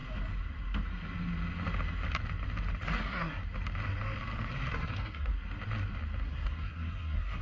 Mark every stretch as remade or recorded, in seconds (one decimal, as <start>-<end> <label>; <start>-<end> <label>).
0.0-3.0 recorded; 3.0-3.4 remade; 3.4-4.7 recorded; 4.7-5.3 remade; 5.3-6.2 recorded; 6.2-7.4 remade